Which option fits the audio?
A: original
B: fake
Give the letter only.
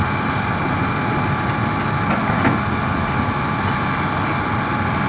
A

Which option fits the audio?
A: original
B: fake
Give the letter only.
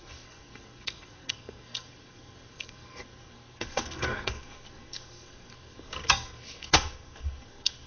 B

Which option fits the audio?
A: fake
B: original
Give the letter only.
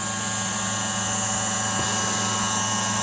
B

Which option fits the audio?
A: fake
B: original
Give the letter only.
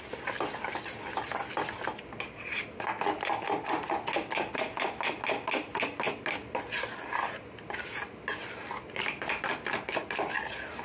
B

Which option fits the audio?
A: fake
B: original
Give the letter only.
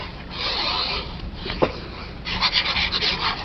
B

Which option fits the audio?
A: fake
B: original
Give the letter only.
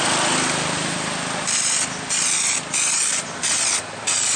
B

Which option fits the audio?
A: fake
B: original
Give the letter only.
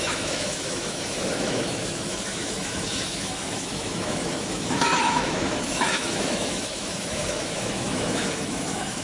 A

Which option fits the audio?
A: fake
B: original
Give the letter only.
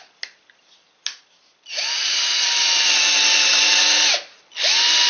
B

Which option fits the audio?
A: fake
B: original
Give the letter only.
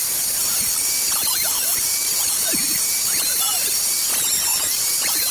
A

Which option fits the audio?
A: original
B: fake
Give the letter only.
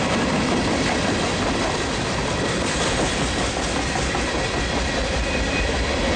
A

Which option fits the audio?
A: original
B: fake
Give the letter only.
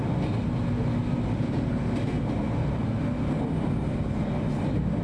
A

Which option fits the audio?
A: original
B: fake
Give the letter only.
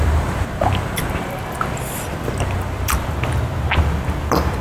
B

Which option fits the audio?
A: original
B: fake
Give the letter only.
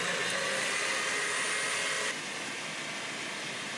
A